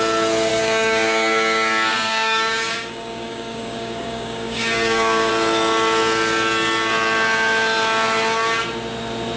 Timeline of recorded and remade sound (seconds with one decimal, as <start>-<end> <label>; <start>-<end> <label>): 0.0-0.5 recorded; 0.5-5.3 remade; 5.3-9.4 recorded